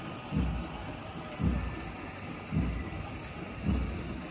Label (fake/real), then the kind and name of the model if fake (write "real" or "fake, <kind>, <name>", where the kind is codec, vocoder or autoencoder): real